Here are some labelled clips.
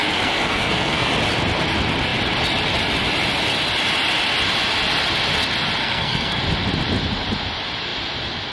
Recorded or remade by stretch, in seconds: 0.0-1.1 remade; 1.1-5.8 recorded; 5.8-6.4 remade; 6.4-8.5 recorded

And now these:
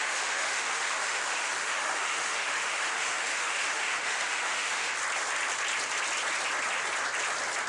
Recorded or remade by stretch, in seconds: 0.0-4.9 remade; 4.9-7.7 recorded

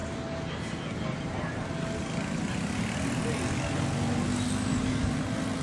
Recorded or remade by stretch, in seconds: 0.0-5.6 recorded

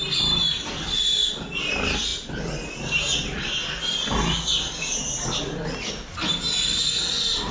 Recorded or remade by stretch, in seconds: 0.0-7.5 recorded